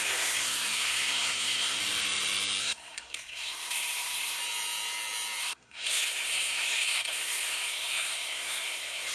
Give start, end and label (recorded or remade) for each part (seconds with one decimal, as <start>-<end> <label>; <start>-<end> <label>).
0.0-1.8 remade; 1.8-2.6 recorded; 2.6-4.4 remade; 4.4-5.4 recorded; 5.4-9.1 remade